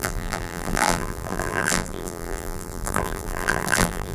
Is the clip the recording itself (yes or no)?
no